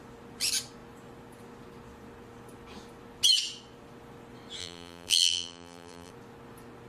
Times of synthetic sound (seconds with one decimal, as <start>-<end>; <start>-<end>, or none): 4.6-6.1